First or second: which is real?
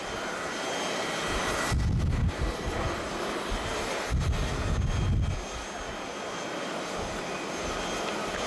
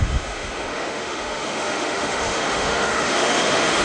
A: first